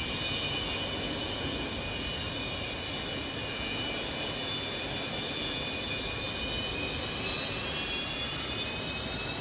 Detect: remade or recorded recorded